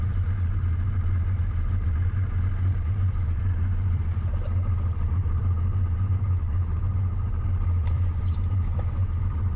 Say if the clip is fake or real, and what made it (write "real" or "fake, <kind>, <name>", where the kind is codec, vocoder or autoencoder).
fake, vocoder, BigVGAN v2